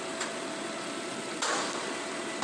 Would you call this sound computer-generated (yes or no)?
yes